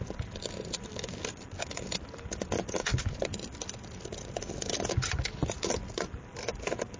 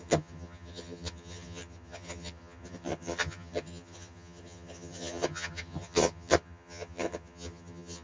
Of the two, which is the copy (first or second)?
second